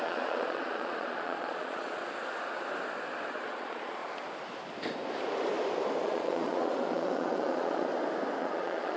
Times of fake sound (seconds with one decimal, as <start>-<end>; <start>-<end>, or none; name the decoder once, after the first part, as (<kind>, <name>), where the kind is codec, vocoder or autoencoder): 0.0-2.0 (vocoder, Vocos); 3.3-4.0; 6.0-7.9; 8.4-9.0